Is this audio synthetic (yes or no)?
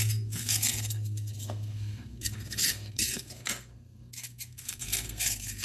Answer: yes